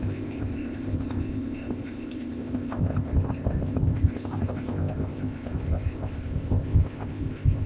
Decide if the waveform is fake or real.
fake